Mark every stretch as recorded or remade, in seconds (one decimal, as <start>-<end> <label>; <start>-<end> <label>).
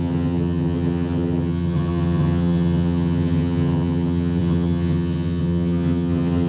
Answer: 0.0-6.5 remade